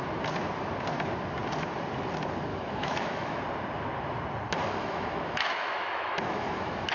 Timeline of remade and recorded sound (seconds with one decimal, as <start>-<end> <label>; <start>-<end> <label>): 0.0-2.5 recorded; 2.5-3.4 remade; 3.4-4.6 recorded; 4.6-6.9 remade